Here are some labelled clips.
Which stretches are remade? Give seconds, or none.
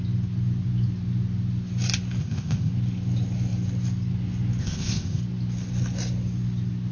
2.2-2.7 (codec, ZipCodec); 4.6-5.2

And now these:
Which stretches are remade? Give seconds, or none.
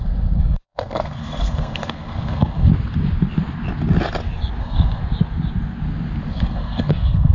0.0-2.7 (codec, SNAC); 4.6-5.0; 6.3-7.3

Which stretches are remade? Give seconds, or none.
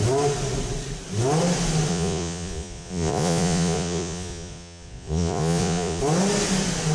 1.9-6.0 (vocoder, Vocos)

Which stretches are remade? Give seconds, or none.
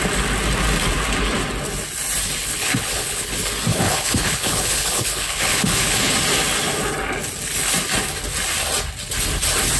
2.4-3.3 (codec, HILCodec); 3.7-6.1